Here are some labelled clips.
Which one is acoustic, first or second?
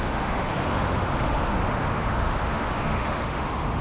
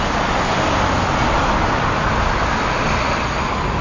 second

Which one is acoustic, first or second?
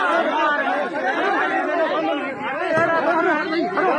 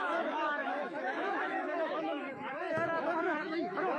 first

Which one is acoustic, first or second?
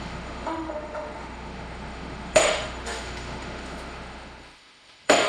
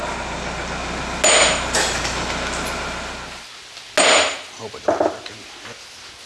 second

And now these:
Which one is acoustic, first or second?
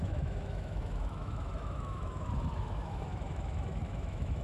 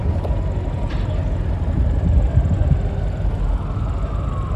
second